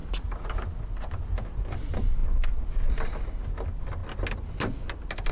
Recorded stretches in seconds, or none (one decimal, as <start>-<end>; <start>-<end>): 0.0-5.3